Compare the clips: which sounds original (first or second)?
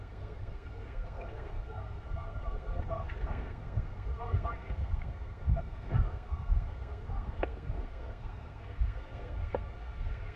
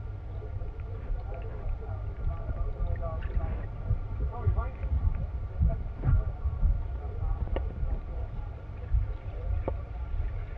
second